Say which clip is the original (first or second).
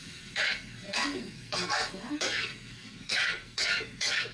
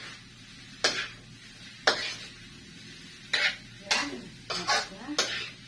second